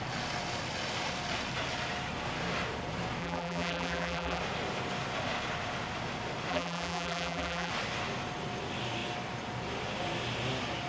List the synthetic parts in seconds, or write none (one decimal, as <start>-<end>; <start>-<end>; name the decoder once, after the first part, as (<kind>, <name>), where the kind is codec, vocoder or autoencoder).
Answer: 3.2-4.4 (vocoder, BigVGAN v2); 6.5-7.7